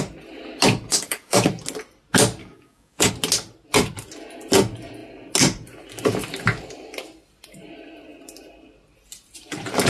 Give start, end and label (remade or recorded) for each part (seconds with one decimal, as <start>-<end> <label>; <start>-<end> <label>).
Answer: 0.0-0.9 recorded; 0.9-1.5 remade; 1.5-2.4 recorded; 2.4-3.1 remade; 3.1-9.9 recorded